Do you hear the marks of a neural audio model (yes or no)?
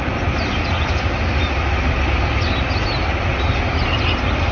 no